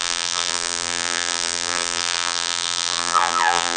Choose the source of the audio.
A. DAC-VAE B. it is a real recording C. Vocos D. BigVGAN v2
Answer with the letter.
D